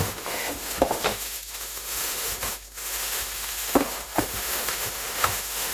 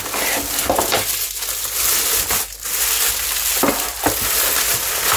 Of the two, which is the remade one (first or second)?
first